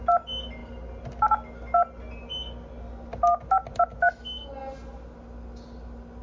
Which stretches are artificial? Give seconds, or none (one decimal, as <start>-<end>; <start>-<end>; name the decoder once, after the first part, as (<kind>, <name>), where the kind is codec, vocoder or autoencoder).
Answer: none